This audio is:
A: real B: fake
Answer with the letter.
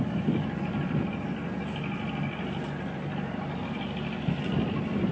A